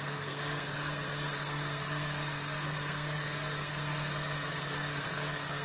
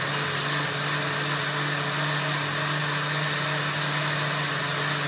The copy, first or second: first